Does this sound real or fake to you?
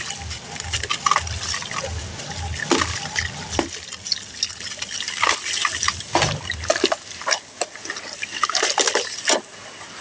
real